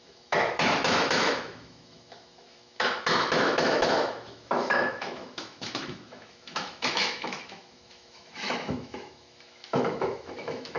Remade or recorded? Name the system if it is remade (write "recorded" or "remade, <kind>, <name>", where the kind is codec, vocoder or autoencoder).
remade, autoencoder, DAC-VAE